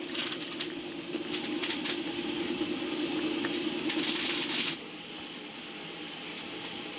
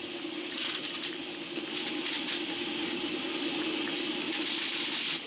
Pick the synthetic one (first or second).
second